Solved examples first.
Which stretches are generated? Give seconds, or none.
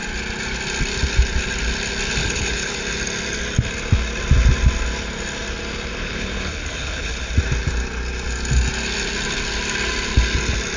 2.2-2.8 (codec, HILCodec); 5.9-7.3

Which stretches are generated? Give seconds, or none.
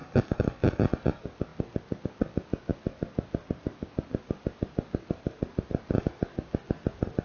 0.0-0.8 (codec, DAC)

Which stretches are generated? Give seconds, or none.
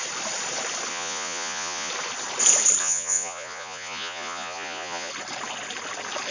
0.9-1.9 (vocoder, Vocos); 2.8-5.1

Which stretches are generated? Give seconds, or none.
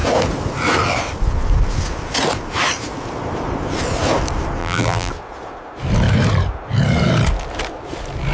4.6-5.1 (vocoder, BigVGAN v2)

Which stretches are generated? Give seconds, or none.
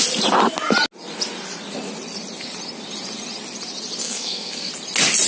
4.0-4.7 (codec, SNAC)